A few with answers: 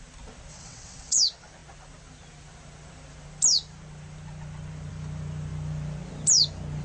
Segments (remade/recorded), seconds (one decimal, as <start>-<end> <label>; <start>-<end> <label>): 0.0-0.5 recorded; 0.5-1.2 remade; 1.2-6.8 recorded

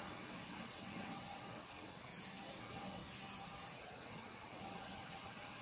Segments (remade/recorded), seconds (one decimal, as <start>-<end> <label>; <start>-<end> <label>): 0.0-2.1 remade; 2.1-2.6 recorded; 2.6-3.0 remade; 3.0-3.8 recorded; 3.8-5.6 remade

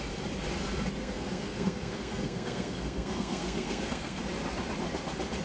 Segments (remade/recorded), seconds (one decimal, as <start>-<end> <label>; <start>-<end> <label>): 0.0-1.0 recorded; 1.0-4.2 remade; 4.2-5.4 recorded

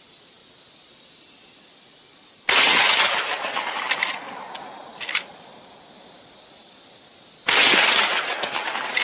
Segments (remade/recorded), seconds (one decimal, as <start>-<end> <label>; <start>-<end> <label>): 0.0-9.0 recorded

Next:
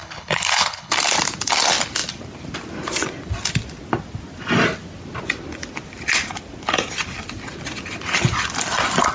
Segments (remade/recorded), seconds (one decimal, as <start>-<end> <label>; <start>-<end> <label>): 0.0-0.9 remade; 0.9-9.1 recorded

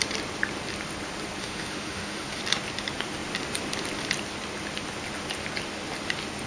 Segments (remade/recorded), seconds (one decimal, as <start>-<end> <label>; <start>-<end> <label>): 0.0-1.4 recorded; 1.4-2.4 remade; 2.4-6.5 recorded

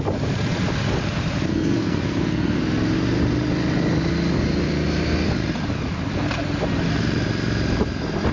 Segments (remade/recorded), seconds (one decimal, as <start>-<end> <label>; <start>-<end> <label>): 0.0-1.5 recorded; 1.5-2.6 remade; 2.6-8.3 recorded

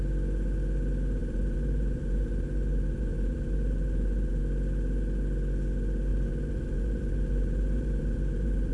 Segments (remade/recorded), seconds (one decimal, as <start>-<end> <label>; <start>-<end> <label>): 0.0-1.2 recorded; 1.2-4.4 remade; 4.4-6.1 recorded; 6.1-8.7 remade